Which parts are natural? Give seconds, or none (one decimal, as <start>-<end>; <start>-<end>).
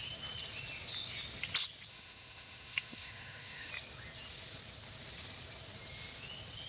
0.0-1.9; 3.7-6.7